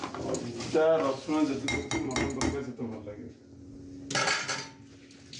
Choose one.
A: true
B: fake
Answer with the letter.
A